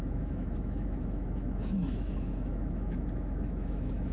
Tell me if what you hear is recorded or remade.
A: remade